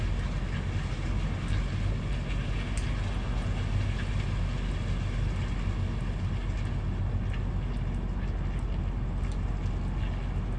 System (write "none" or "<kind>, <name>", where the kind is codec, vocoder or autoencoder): none